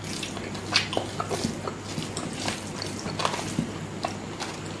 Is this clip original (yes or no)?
yes